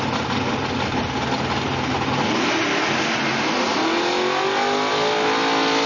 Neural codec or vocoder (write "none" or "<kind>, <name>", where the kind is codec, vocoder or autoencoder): none